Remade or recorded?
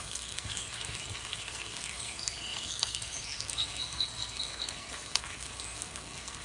remade